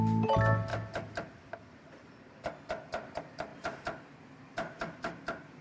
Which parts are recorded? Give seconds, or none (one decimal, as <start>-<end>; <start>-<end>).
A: 0.0-0.7; 1.8-5.6